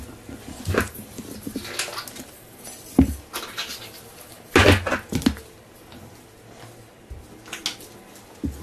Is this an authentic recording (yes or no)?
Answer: yes